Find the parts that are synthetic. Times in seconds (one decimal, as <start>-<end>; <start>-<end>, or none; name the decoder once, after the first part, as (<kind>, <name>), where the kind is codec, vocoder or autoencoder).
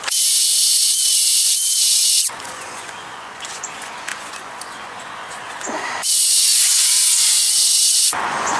0.0-8.6 (vocoder, Vocos)